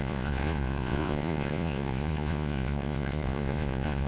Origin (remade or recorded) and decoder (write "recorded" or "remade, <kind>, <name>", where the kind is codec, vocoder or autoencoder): remade, vocoder, Vocos